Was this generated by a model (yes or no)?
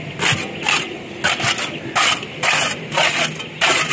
no